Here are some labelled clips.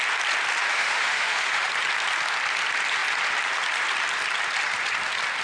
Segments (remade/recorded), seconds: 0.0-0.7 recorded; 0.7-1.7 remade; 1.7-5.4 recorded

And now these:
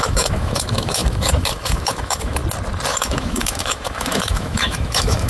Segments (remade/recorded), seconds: 0.0-2.4 remade; 2.4-2.9 recorded; 2.9-5.3 remade

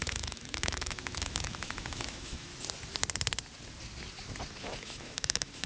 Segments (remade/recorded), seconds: 0.0-2.5 remade; 2.5-4.8 recorded; 4.8-5.7 remade

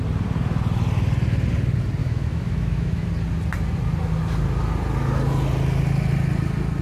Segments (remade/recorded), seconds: 0.0-2.0 recorded; 2.0-3.1 remade; 3.1-6.8 recorded

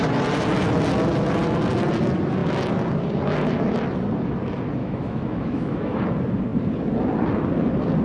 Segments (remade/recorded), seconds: 0.0-4.8 recorded; 4.8-6.0 remade; 6.0-8.0 recorded